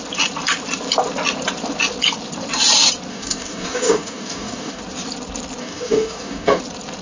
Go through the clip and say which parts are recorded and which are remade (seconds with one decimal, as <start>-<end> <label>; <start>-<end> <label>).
0.0-3.1 recorded; 3.1-4.8 remade; 4.8-5.6 recorded; 5.6-6.6 remade; 6.6-7.0 recorded